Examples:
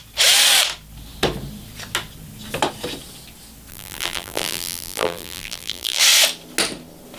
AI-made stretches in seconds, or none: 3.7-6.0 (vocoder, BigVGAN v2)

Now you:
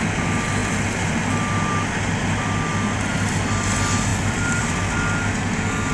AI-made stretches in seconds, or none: 4.1-4.7 (vocoder, BigVGAN v2)

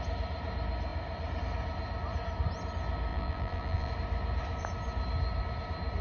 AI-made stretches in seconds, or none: 3.1-3.9 (vocoder, BigVGAN v2)

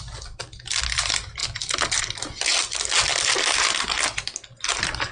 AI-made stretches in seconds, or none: none

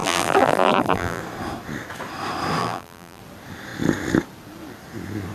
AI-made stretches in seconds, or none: 0.0-1.2 (vocoder, BigVGAN v2); 2.6-3.2

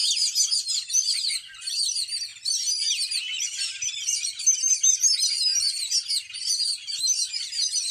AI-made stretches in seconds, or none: 2.3-3.9 (vocoder, BigVGAN v2)

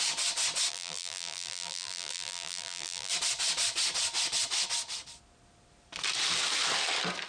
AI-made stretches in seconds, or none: 0.7-3.1 (vocoder, BigVGAN v2)

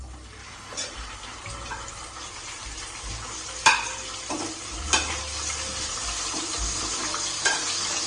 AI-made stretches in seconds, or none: 0.0-8.1 (vocoder, BigVGAN v2)